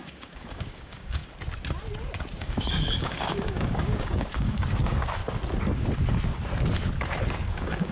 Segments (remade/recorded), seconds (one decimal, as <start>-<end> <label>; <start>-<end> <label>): 0.0-1.2 remade; 1.2-2.4 recorded; 2.4-5.2 remade; 5.2-7.5 recorded; 7.5-7.9 remade